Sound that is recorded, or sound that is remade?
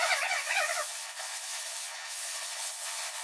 remade